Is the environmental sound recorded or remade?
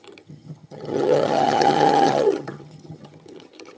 remade